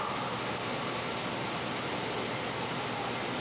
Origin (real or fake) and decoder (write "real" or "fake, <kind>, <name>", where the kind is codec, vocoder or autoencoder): real